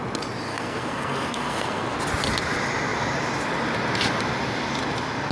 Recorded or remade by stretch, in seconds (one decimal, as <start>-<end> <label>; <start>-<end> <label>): 0.0-0.5 recorded; 0.5-2.0 remade; 2.0-5.3 recorded